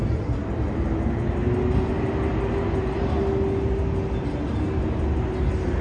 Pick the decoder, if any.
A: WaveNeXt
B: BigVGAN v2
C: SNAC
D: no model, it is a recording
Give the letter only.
D